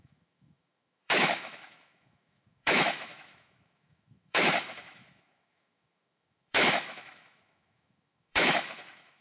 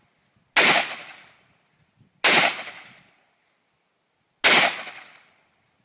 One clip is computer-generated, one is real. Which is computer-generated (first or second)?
first